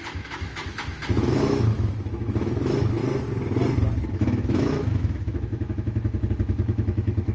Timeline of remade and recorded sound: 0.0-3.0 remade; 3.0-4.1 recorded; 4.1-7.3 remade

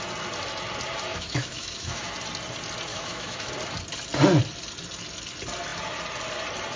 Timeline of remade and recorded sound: 0.0-1.1 recorded; 1.1-2.1 remade; 2.1-2.9 recorded; 2.9-3.5 remade; 3.5-6.8 recorded